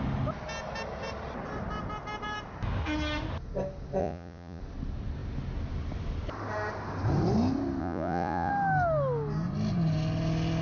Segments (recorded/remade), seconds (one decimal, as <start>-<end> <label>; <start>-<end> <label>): 0.0-4.0 recorded; 4.0-4.6 remade; 4.6-7.8 recorded; 7.8-8.5 remade; 8.5-10.6 recorded